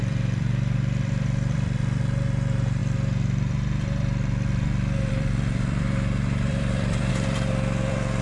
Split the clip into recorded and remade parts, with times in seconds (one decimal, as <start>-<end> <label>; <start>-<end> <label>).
0.0-8.2 remade